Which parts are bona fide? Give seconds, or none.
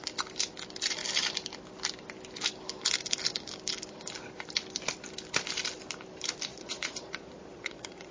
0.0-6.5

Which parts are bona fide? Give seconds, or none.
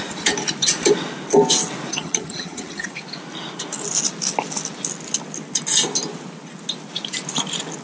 0.0-1.9; 2.9-7.8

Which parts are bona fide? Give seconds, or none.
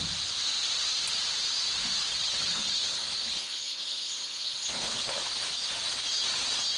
0.0-2.1; 5.1-6.8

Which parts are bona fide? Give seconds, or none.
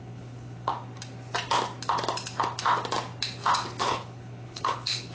0.7-3.8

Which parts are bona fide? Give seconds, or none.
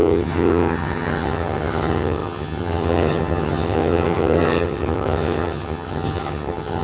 none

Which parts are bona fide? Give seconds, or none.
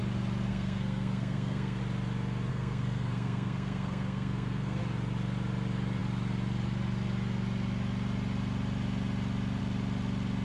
0.0-0.5; 1.8-2.5; 4.8-10.4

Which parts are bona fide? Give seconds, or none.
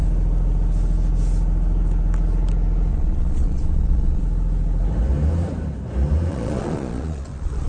0.0-2.9; 4.2-6.3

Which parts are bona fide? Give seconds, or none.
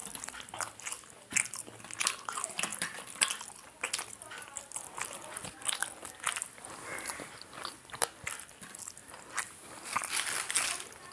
0.0-2.7; 3.9-9.0; 9.7-11.1